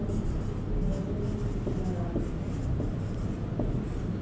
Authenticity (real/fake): real